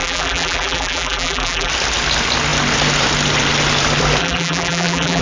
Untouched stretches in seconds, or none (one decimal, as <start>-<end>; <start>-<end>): 1.7-4.2